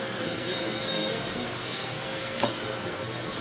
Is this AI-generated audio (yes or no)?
yes